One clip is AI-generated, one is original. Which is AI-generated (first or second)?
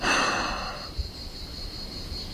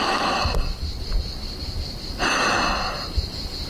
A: first